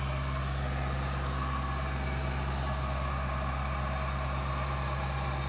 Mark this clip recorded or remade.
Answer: recorded